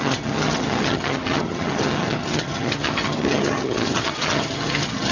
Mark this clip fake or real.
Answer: fake